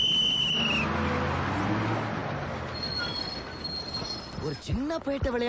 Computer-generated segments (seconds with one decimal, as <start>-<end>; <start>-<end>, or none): none